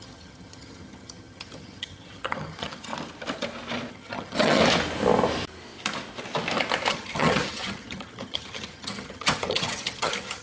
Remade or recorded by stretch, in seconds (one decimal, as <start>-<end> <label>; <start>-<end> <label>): 0.0-2.9 remade; 2.9-3.9 recorded; 3.9-4.6 remade; 4.6-6.9 recorded; 6.9-10.4 remade